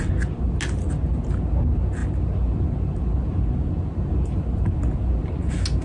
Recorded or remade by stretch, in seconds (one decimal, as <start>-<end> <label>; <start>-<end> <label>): 0.0-5.8 recorded